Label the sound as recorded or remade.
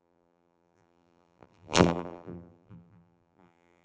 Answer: remade